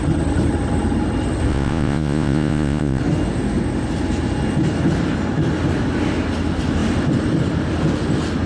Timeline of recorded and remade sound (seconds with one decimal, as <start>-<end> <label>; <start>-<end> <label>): 0.0-1.5 recorded; 1.5-3.0 remade; 3.0-8.5 recorded

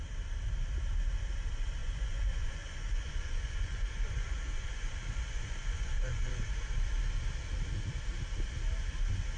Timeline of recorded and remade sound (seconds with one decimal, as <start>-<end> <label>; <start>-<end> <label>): 0.0-1.8 recorded; 1.8-6.5 remade; 6.5-9.4 recorded

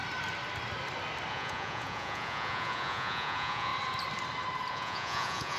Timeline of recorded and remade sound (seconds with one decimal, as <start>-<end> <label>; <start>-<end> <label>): 0.0-1.3 recorded; 1.3-3.7 remade; 3.7-4.7 recorded; 4.7-5.6 remade

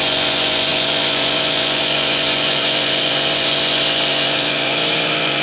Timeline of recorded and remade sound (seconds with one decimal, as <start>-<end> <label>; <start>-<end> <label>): 0.0-5.4 remade

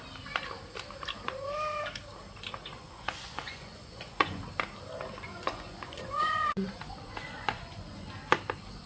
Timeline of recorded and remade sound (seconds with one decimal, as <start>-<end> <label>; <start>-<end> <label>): 0.0-2.7 recorded; 2.7-4.4 remade; 4.4-5.3 recorded; 5.3-8.1 remade; 8.1-8.9 recorded